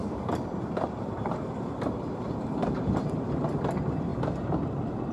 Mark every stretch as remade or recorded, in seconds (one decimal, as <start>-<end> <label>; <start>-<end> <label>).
0.0-3.1 remade; 3.1-5.1 recorded